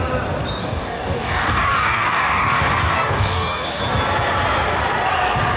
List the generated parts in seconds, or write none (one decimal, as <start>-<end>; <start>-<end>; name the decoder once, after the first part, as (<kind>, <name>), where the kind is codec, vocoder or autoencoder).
0.6-3.8 (codec, DAC)